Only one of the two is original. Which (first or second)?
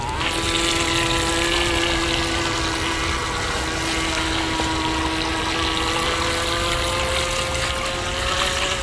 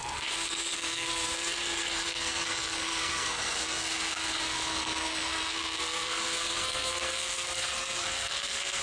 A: first